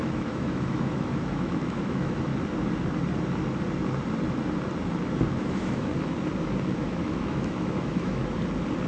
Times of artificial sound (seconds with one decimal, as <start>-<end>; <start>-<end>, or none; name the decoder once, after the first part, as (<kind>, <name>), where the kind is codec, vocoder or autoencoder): 0.0-2.3 (autoencoder, DAC-VAE); 5.3-5.9; 6.8-8.2